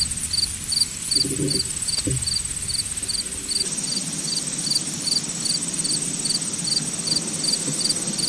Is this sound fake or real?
real